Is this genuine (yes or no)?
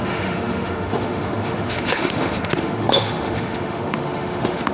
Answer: no